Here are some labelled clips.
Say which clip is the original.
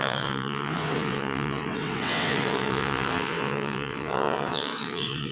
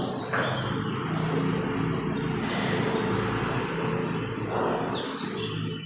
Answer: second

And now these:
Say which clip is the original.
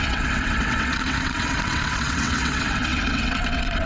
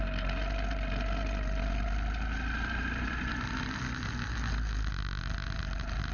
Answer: second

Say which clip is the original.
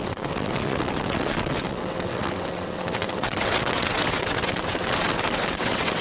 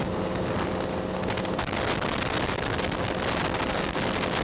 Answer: second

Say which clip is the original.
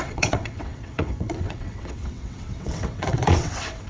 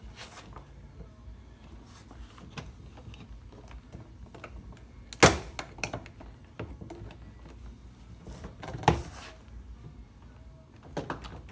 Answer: second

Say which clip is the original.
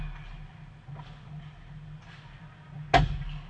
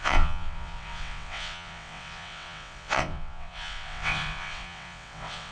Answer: first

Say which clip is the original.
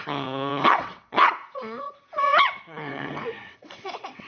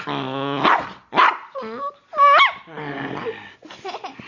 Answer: second